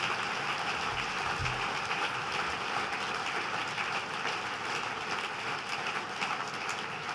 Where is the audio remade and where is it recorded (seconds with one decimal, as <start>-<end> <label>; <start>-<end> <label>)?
0.0-7.1 recorded